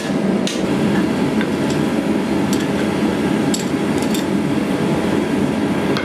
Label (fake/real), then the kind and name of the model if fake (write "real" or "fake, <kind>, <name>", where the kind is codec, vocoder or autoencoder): real